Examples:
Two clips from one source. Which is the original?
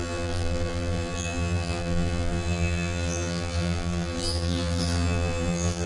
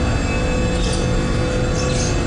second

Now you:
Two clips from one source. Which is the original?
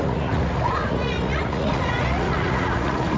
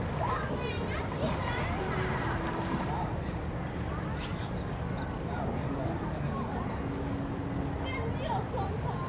second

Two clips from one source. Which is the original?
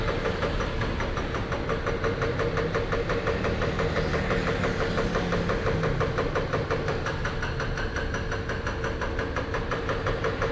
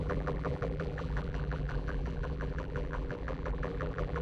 first